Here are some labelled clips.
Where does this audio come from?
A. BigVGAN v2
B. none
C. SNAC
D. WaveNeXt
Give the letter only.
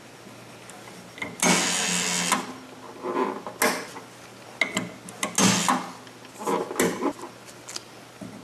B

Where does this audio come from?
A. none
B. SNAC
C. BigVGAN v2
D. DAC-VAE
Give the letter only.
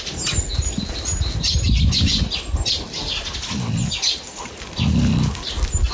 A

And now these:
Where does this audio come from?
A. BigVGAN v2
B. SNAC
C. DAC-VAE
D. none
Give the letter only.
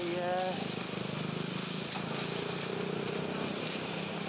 D